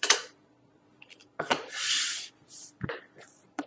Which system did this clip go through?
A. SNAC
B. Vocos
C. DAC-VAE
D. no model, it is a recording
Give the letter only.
B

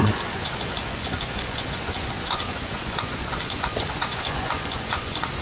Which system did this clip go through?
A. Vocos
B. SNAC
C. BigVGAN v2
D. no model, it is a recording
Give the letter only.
A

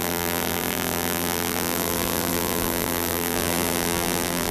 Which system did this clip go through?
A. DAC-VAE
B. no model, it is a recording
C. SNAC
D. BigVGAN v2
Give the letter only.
D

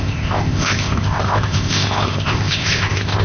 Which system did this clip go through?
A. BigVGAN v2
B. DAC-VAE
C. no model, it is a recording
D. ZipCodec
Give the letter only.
D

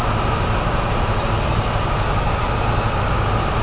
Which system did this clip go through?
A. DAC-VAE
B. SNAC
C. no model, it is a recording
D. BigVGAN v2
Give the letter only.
C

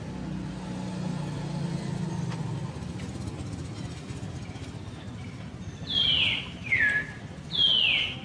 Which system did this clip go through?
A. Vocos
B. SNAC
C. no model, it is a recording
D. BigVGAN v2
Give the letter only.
C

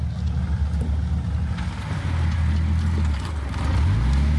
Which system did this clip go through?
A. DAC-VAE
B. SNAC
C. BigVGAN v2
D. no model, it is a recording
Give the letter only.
D